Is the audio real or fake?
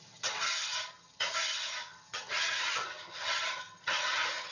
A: fake